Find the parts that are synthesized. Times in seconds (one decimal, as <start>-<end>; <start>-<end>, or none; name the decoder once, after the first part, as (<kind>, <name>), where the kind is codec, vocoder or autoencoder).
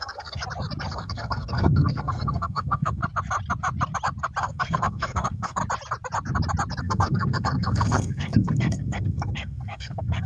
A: 0.0-0.4 (codec, SNAC); 0.9-3.0; 4.4-5.6; 6.8-10.3